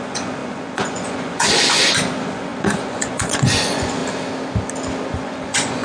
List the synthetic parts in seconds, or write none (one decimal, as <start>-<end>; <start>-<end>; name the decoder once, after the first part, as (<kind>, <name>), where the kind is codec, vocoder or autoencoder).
0.0-4.0 (vocoder, Vocos); 5.1-5.8